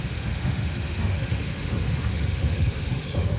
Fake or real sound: fake